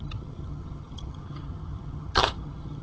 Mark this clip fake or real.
fake